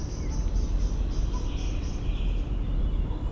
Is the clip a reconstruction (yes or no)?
no